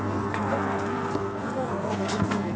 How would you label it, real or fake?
fake